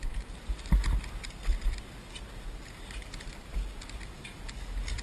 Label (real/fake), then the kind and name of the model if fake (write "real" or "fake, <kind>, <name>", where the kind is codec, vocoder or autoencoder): real